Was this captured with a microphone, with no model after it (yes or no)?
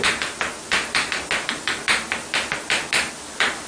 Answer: yes